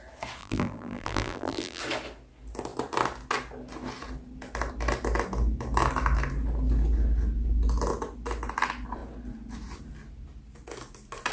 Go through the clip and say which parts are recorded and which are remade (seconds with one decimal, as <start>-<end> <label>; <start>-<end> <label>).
0.0-0.4 recorded; 0.4-1.8 remade; 1.8-11.3 recorded